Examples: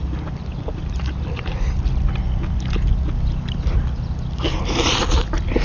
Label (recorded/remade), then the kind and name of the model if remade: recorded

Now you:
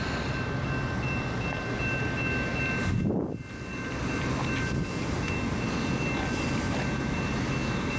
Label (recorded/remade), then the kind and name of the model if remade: recorded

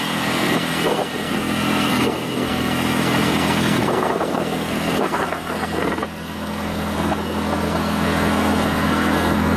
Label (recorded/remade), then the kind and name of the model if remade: remade, codec, SNAC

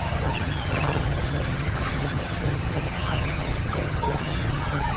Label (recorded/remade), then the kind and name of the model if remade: remade, vocoder, HiFi-GAN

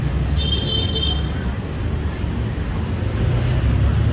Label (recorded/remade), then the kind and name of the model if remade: recorded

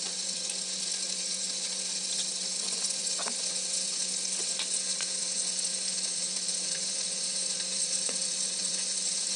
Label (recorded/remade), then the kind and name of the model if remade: remade, vocoder, Vocos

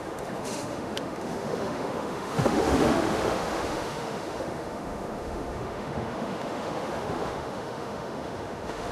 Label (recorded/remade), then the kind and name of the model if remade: remade, autoencoder, DAC-VAE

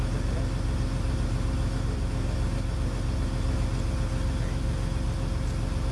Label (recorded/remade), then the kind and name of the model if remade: recorded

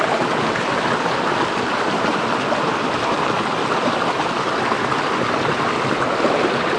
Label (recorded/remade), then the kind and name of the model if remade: recorded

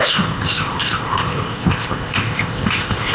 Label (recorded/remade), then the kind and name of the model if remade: remade, codec, ZipCodec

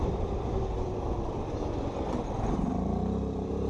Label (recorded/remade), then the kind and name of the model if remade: remade, vocoder, BigVGAN v2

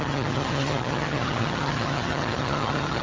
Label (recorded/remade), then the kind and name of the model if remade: remade, vocoder, HiFi-GAN